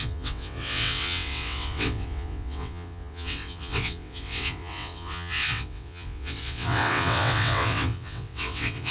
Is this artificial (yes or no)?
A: yes